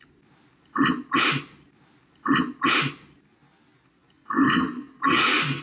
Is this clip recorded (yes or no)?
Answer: yes